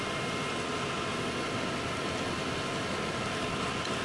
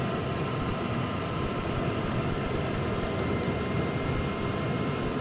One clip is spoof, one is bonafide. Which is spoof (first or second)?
second